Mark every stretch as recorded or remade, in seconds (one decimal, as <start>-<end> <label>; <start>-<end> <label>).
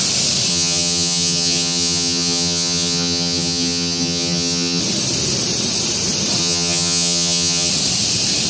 0.0-0.5 recorded; 0.5-4.8 remade; 4.8-6.4 recorded; 6.4-7.7 remade; 7.7-8.5 recorded